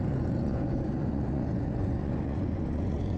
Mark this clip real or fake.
fake